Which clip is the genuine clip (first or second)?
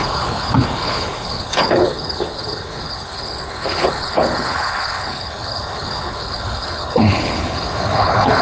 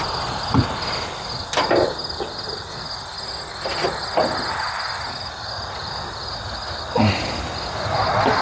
second